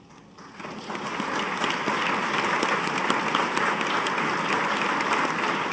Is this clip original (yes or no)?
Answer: yes